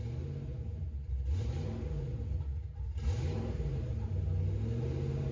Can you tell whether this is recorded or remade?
recorded